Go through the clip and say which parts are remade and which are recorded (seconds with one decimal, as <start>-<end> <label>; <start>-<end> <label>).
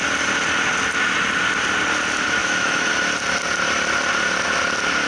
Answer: 0.0-2.4 recorded; 2.4-2.9 remade; 2.9-5.1 recorded